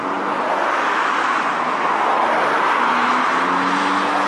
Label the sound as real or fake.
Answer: real